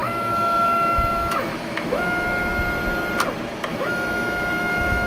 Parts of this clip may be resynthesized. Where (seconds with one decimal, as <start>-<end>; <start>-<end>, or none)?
0.0-2.0; 3.7-5.1